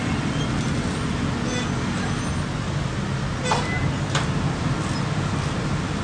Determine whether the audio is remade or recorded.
recorded